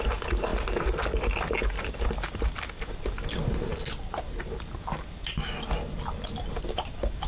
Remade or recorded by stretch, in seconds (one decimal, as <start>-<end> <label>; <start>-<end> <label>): 0.0-0.5 recorded; 0.5-1.2 remade; 1.2-7.3 recorded